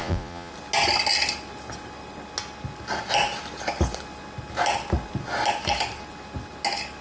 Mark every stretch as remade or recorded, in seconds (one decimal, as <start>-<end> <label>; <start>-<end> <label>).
0.0-0.5 remade; 0.5-7.0 recorded